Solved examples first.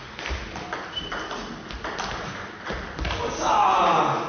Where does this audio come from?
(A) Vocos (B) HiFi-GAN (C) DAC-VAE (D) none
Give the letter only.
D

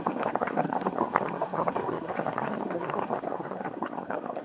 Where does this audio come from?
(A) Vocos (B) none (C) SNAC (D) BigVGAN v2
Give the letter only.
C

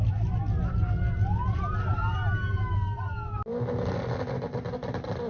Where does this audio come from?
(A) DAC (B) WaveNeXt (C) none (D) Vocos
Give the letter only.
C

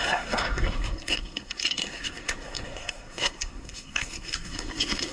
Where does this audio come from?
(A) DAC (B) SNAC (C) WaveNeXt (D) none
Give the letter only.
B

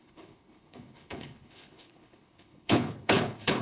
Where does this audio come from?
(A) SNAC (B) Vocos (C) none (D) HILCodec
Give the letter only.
D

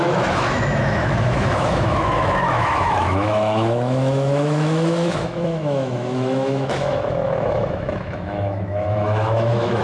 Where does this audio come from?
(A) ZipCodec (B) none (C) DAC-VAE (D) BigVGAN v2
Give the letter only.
C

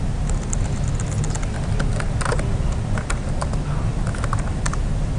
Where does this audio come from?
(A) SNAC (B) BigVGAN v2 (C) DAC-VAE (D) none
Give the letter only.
D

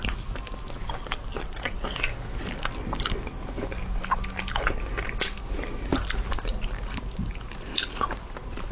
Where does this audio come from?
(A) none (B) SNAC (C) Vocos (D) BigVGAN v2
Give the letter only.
A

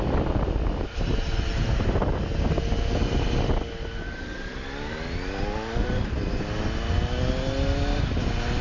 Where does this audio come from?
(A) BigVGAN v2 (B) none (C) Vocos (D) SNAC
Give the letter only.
B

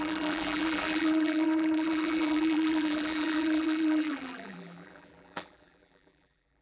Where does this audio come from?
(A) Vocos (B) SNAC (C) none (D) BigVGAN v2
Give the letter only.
D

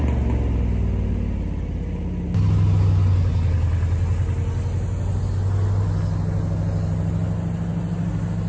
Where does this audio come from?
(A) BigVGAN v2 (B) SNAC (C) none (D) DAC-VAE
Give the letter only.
C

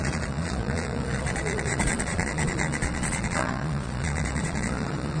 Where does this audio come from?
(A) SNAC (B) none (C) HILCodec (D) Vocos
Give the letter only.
D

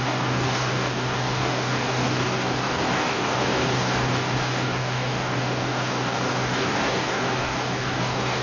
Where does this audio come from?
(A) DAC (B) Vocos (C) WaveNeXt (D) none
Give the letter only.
A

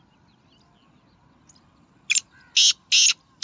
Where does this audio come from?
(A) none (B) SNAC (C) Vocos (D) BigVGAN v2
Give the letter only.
A